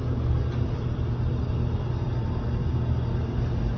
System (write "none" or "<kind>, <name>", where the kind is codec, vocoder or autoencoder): none